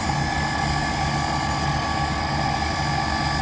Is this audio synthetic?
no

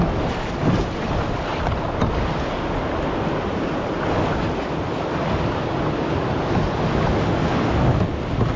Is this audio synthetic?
no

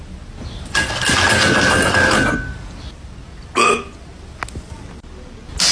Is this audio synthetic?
no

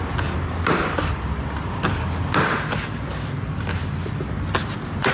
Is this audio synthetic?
no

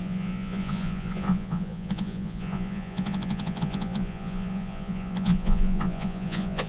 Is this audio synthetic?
yes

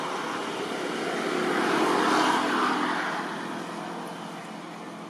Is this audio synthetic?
no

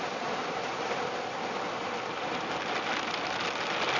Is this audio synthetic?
no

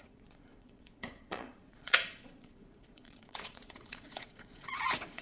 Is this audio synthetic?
yes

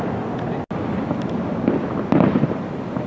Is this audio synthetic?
no